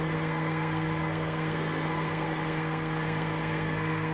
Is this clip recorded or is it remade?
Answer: remade